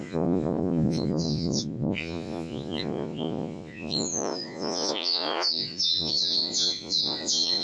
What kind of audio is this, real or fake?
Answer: fake